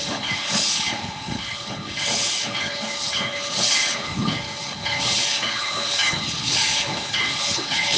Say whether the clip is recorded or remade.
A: remade